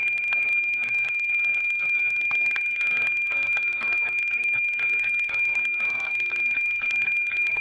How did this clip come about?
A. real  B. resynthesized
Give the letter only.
B